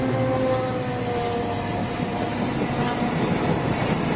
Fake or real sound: real